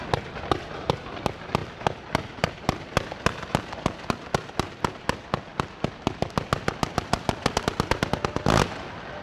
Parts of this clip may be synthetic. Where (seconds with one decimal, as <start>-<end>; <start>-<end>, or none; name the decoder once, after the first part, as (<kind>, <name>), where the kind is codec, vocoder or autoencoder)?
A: 1.6-2.5 (vocoder, BigVGAN v2)